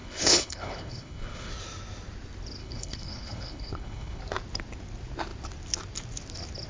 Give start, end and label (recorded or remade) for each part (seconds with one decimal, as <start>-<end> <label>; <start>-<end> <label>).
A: 0.0-1.5 remade; 1.5-2.6 recorded; 2.6-4.2 remade; 4.2-6.7 recorded